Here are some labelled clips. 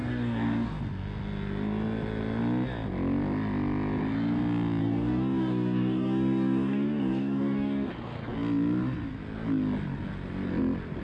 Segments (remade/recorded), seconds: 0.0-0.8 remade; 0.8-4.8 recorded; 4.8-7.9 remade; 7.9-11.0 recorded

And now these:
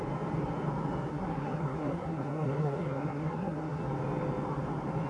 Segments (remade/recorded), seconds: 0.0-1.1 recorded; 1.1-3.8 remade; 3.8-5.1 recorded

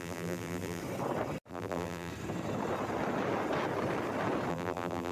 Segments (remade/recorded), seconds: 0.0-0.8 remade; 0.8-1.5 recorded; 1.5-2.1 remade; 2.1-4.5 recorded; 4.5-5.1 remade